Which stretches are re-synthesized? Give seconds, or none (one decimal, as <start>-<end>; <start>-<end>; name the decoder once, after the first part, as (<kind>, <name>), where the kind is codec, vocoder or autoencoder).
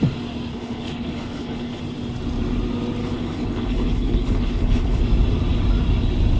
0.5-1.8 (codec, HILCodec); 3.0-5.0